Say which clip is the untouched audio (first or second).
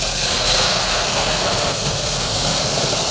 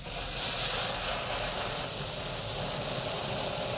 second